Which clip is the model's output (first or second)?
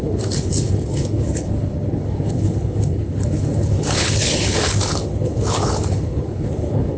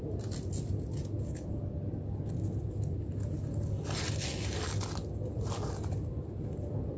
first